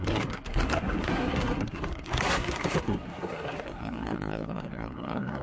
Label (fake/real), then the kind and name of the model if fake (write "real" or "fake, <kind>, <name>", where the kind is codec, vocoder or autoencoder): fake, codec, SNAC